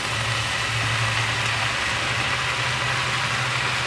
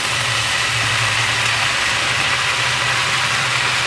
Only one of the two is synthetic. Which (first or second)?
second